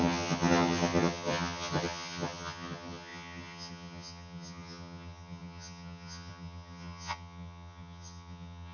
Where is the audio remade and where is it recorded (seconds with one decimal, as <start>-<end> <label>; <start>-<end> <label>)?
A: 0.0-8.7 remade